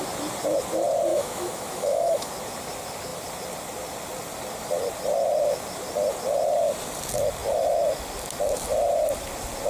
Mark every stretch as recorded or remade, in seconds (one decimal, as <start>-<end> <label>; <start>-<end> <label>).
0.0-1.1 recorded; 1.1-2.3 remade; 2.3-9.7 recorded